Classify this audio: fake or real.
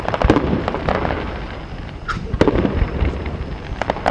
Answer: real